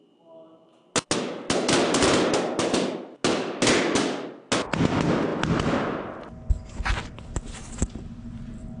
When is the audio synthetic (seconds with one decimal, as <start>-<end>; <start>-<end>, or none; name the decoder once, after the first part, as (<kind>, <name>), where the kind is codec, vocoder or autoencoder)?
none